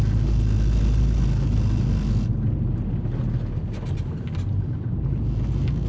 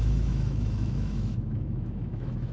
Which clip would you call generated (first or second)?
second